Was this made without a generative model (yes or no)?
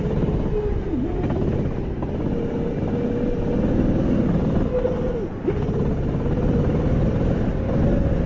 yes